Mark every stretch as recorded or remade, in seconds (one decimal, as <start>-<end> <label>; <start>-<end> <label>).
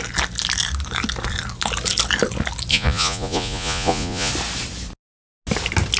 0.0-2.7 recorded; 2.7-4.3 remade; 4.3-6.0 recorded